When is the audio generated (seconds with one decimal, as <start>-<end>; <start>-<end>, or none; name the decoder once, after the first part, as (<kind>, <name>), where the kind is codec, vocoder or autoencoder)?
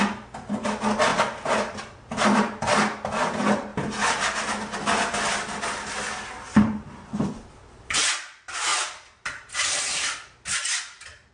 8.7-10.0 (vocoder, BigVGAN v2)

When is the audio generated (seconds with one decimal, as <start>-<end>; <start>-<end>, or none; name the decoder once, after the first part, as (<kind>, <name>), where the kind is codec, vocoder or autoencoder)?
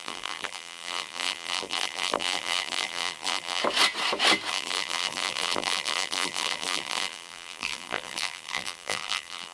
0.0-3.6 (vocoder, BigVGAN v2); 4.5-9.5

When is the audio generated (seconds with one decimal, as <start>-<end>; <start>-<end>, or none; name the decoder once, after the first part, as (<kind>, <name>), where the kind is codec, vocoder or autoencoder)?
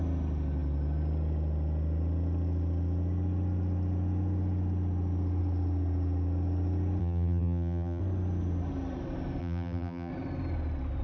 7.0-8.0 (vocoder, BigVGAN v2); 9.4-10.1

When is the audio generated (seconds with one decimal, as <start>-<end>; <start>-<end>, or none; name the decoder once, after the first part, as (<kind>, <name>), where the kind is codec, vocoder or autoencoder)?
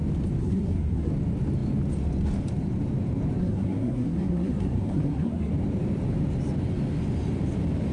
0.4-1.1 (codec, SNAC); 3.4-5.5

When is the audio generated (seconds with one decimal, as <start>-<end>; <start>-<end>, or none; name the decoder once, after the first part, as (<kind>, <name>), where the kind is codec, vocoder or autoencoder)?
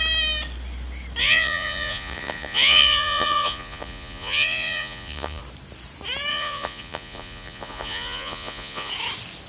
1.2-5.4 (vocoder, Vocos); 6.3-8.9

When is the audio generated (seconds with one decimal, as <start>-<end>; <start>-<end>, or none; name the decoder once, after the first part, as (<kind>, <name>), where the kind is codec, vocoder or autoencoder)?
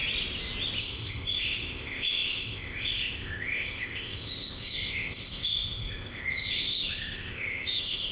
0.8-8.1 (codec, ZipCodec)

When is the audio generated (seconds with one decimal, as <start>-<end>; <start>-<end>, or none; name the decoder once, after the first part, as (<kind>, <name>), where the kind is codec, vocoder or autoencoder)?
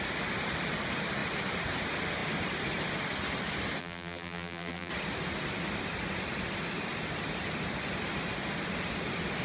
3.8-4.9 (vocoder, BigVGAN v2)